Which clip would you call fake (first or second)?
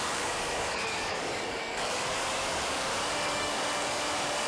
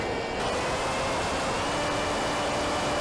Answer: first